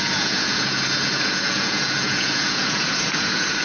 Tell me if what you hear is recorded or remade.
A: remade